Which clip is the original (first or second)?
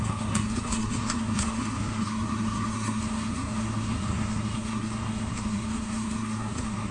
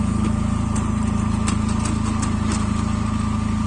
second